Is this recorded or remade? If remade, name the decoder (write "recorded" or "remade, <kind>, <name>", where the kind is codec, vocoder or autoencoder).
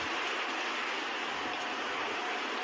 recorded